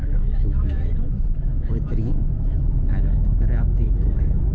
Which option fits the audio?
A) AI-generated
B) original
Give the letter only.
A